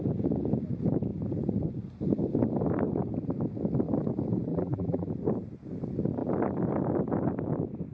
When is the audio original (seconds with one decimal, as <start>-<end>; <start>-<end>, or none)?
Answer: 0.0-4.5; 5.1-7.9